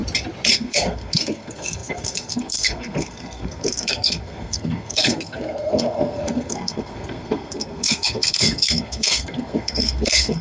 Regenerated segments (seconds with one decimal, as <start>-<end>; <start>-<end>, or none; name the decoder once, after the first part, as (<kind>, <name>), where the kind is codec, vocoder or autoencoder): 0.5-10.4 (codec, SNAC)

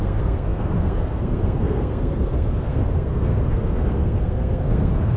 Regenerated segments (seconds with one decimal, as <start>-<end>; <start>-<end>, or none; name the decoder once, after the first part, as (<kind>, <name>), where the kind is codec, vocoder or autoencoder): 0.0-5.2 (codec, SNAC)

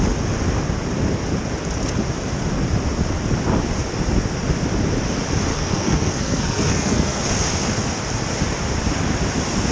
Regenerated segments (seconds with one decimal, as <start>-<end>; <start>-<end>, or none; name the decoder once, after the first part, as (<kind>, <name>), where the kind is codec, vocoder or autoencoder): 5.5-7.2 (codec, SNAC)

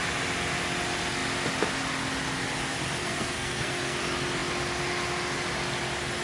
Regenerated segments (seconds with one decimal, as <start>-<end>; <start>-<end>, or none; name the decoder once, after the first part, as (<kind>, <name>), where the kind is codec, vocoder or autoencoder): 3.0-4.0 (codec, SNAC)